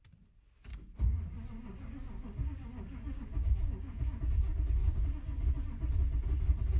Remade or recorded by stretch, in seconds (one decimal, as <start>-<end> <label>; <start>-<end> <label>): 0.0-0.7 recorded; 0.7-4.2 remade; 4.2-4.8 recorded; 4.8-5.5 remade; 5.5-6.8 recorded